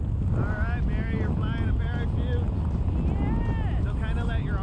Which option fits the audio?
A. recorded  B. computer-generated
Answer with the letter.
A